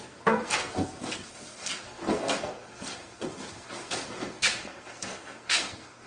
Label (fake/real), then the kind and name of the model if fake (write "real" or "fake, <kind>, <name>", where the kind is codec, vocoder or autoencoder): fake, codec, SNAC